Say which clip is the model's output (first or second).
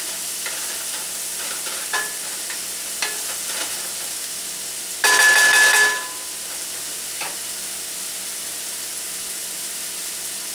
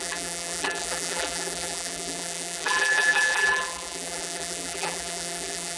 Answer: second